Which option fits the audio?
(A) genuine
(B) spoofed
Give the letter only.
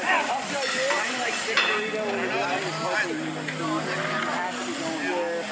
A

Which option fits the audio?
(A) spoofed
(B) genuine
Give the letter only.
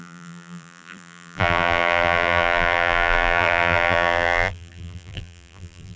A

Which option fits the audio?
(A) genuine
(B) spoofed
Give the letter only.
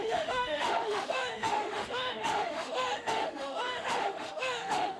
B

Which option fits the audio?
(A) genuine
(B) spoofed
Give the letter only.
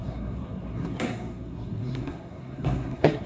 B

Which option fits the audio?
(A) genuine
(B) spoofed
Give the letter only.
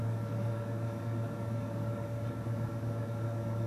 B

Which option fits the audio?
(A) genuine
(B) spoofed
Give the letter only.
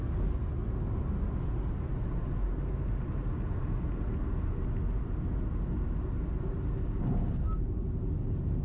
A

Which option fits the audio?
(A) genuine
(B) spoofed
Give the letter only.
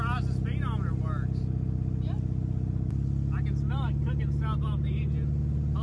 A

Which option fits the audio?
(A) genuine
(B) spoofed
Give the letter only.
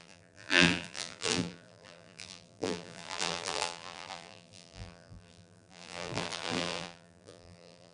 B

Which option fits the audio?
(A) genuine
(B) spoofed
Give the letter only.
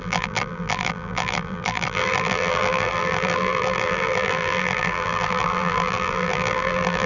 B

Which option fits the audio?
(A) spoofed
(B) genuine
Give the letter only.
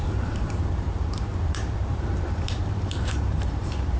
A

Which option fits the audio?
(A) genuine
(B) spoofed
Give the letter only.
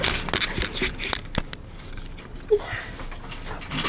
A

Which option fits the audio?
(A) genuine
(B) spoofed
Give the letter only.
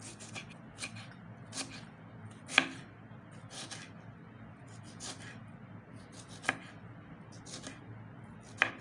A